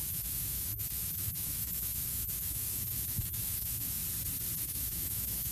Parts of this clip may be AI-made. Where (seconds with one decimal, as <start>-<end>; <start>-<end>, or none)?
0.0-4.0; 4.6-5.5